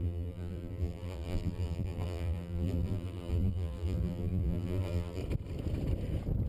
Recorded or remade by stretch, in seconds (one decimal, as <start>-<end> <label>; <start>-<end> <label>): 0.0-5.2 remade; 5.2-6.5 recorded